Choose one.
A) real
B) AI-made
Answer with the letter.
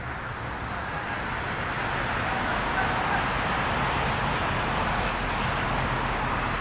A